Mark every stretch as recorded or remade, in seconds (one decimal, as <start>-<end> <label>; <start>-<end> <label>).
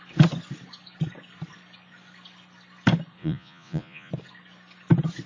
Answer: 0.0-3.2 recorded; 3.2-4.1 remade; 4.1-5.3 recorded